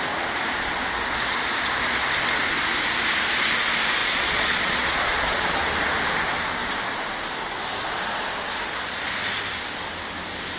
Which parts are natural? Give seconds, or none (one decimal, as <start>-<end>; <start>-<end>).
0.0-4.0; 5.5-8.5; 9.1-10.6